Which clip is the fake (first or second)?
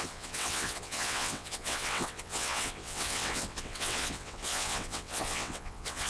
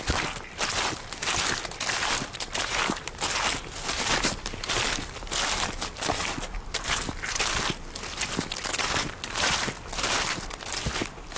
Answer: first